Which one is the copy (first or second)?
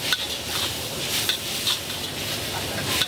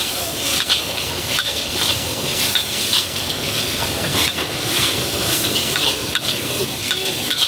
second